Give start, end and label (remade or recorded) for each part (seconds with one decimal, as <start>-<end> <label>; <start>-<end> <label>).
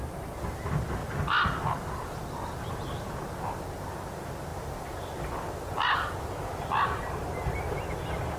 0.0-8.4 recorded